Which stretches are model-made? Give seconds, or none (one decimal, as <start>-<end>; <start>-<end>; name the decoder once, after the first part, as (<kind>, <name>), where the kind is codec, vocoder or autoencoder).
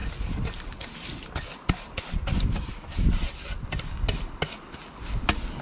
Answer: none